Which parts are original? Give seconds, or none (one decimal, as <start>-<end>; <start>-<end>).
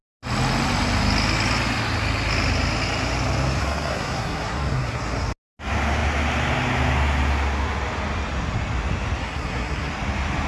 0.0-3.6; 5.0-9.2; 9.9-10.5